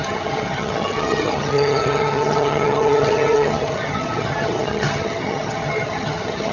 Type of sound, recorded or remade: remade